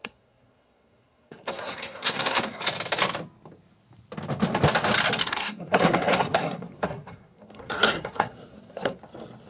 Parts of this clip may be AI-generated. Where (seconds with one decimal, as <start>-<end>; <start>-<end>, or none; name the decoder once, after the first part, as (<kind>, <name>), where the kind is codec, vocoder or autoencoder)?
0.0-2.6 (codec, SNAC); 5.2-9.0